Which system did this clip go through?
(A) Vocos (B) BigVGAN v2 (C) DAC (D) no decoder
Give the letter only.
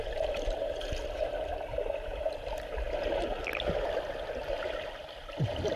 D